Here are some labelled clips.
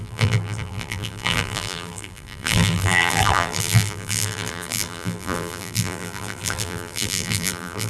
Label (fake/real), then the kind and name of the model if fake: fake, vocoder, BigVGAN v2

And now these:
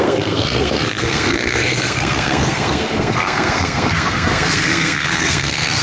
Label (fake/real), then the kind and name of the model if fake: fake, codec, SNAC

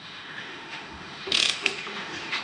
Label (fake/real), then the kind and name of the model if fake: fake, autoencoder, DAC-VAE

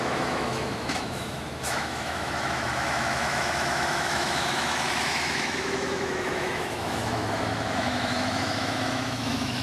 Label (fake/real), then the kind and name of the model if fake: fake, autoencoder, DAC-VAE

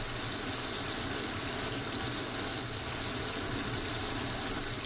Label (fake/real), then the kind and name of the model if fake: real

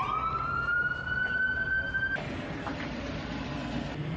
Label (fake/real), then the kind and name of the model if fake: real